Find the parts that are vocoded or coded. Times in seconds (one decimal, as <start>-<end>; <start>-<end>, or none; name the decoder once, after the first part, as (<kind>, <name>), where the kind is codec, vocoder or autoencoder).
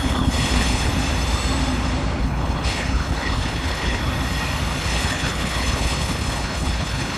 0.0-0.9 (codec, HILCodec); 2.2-4.0; 4.8-7.2